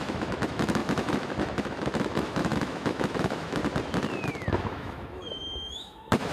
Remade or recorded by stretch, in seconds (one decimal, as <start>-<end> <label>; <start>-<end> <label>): 0.0-3.6 remade; 3.6-4.5 recorded; 4.5-6.3 remade